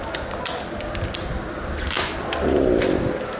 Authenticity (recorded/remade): recorded